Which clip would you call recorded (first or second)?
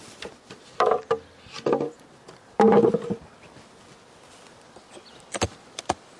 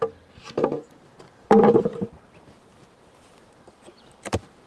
first